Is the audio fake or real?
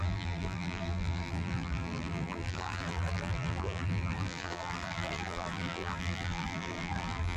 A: fake